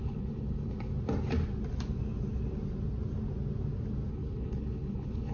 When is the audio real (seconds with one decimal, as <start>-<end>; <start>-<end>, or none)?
0.9-4.1